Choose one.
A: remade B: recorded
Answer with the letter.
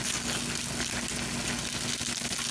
B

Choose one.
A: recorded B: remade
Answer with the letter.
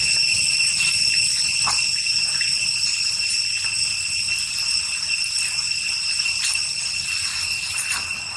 A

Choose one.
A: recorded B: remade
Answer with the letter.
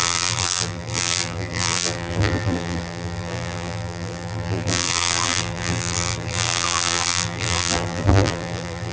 B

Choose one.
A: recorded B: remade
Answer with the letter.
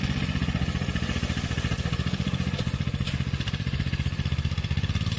B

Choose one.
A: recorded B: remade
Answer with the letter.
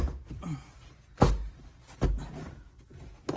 A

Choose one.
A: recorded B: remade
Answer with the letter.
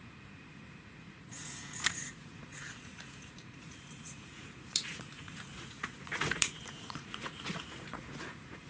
B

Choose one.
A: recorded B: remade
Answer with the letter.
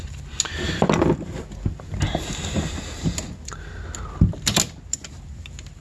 A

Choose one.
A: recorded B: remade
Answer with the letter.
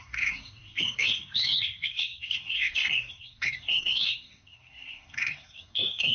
B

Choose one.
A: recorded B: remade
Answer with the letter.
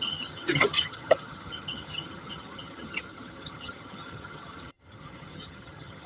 B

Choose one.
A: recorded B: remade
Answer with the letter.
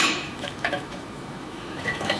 B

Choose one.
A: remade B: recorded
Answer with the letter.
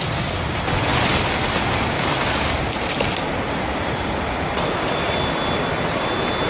B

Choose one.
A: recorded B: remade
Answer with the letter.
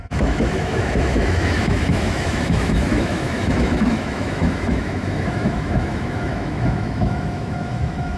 B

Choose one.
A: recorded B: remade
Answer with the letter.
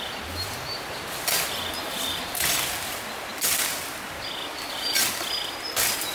A